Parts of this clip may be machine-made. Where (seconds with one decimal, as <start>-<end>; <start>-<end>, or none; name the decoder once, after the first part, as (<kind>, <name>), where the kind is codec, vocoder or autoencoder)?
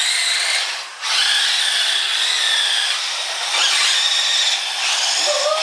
0.9-1.5 (vocoder, BigVGAN v2)